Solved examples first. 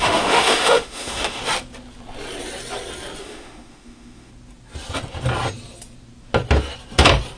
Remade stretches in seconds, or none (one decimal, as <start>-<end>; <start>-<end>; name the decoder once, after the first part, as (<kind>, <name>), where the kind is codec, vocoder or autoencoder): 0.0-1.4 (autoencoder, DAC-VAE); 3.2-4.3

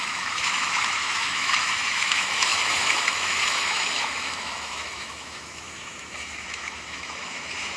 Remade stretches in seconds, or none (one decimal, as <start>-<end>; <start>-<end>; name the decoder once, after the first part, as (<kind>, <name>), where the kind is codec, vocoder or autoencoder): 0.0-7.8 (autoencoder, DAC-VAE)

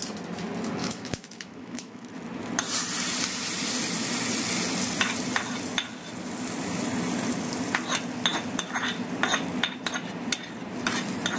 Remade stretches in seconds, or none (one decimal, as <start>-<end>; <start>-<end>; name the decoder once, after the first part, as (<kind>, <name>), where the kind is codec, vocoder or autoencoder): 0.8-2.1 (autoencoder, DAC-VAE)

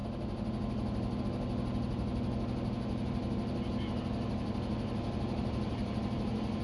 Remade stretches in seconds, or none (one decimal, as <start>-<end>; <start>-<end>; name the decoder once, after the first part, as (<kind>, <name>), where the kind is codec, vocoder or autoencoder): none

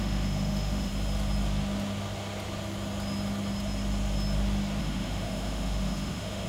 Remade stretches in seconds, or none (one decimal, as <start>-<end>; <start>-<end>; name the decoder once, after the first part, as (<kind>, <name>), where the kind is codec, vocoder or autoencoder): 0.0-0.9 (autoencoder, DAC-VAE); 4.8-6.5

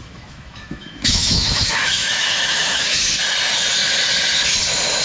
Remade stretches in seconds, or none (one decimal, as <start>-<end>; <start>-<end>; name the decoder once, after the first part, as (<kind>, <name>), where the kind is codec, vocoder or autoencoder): 0.0-3.0 (autoencoder, DAC-VAE)